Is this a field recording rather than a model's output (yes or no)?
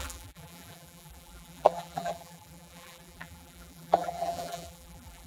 no